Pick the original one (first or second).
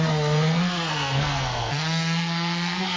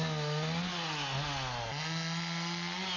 second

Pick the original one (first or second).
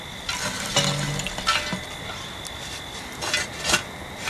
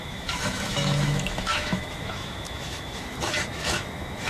first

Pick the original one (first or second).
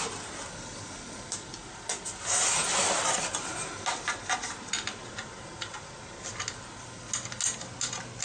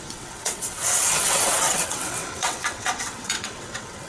first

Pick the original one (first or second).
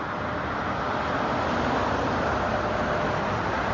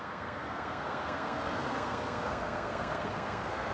first